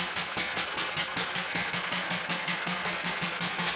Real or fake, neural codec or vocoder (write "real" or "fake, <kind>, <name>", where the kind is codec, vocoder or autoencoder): fake, codec, SNAC